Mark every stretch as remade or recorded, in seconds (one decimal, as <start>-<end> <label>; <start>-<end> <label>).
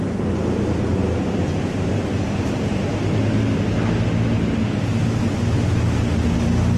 0.0-1.9 recorded; 1.9-3.4 remade; 3.4-6.8 recorded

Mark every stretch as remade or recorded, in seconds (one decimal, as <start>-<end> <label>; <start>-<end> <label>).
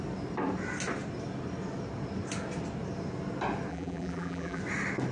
0.0-3.7 recorded; 3.7-4.6 remade; 4.6-5.1 recorded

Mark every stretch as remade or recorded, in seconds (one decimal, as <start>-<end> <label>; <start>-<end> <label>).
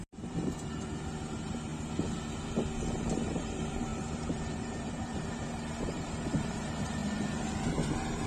0.0-1.7 remade; 1.7-3.0 recorded; 3.0-8.3 remade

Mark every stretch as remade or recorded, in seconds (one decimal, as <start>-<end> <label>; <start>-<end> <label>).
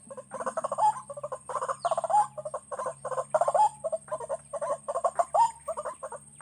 0.0-6.4 recorded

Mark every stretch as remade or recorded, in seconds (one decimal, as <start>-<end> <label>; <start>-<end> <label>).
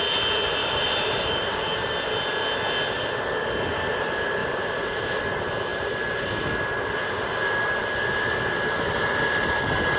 0.0-0.6 recorded; 0.6-1.9 remade; 1.9-4.4 recorded; 4.4-5.2 remade; 5.2-10.0 recorded